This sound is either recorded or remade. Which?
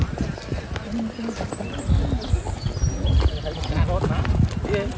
recorded